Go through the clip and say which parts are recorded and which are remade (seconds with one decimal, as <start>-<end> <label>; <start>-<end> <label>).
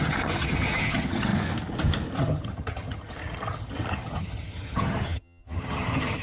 0.0-1.3 remade; 1.3-2.2 recorded; 2.2-6.2 remade